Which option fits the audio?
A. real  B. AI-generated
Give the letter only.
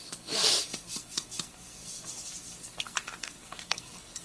B